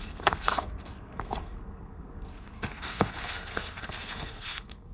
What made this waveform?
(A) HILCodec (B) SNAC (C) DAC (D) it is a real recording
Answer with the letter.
B